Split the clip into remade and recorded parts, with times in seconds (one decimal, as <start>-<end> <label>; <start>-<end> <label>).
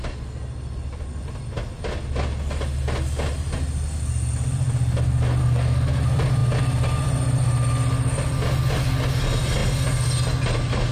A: 0.0-5.4 recorded; 5.4-6.0 remade; 6.0-10.9 recorded